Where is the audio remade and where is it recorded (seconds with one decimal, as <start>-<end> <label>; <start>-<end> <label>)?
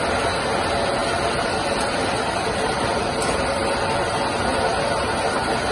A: 0.0-1.0 recorded; 1.0-4.1 remade; 4.1-5.7 recorded